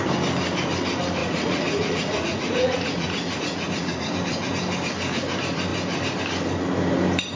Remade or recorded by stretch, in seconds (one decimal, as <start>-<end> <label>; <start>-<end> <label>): 0.0-1.2 recorded; 1.2-4.1 remade; 4.1-7.4 recorded

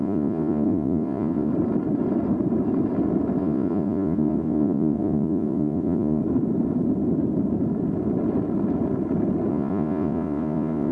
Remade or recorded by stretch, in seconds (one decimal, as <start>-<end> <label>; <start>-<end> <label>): 0.0-1.5 remade; 1.5-3.4 recorded; 3.4-6.2 remade; 6.2-9.5 recorded; 9.5-10.9 remade

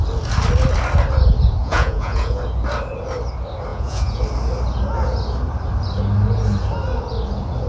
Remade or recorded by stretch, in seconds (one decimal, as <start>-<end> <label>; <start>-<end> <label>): 0.0-1.6 recorded; 1.6-2.4 remade; 2.4-3.7 recorded; 3.7-4.2 remade; 4.2-7.7 recorded

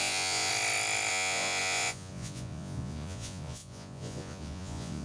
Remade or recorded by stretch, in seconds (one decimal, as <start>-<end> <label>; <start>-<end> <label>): 0.0-0.5 remade; 0.5-1.1 recorded; 1.1-5.0 remade

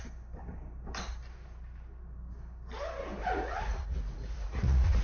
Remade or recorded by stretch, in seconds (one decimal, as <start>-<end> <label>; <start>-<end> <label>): 0.0-3.2 recorded; 3.2-5.0 remade

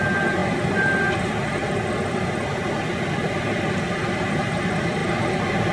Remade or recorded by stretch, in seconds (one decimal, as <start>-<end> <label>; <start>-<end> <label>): 0.0-5.7 recorded